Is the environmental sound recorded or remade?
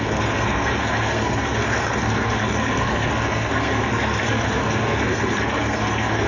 remade